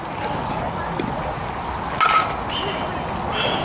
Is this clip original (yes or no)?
yes